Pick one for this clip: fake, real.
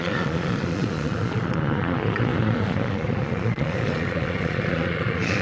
fake